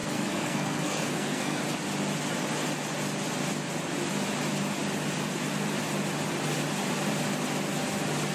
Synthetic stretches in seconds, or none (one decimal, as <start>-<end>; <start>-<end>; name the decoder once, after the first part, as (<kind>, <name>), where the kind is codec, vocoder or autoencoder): 0.0-1.6 (codec, SNAC)